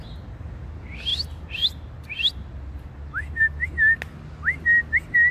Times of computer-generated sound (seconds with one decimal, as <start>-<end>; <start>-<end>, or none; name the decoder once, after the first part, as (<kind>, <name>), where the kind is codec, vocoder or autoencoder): none